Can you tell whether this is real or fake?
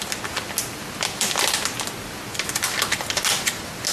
real